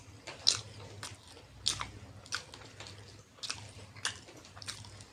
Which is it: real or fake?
real